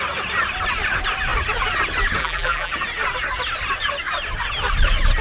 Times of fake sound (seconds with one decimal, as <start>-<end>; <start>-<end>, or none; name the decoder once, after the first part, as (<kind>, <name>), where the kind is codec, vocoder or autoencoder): 2.2-2.7 (vocoder, BigVGAN v2)